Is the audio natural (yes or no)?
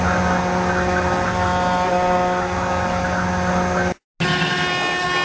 yes